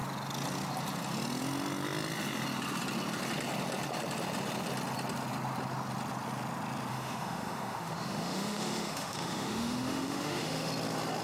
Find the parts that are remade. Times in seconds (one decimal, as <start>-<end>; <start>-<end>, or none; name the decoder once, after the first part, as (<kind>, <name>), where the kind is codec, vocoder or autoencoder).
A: 6.9-10.7 (autoencoder, DAC-VAE)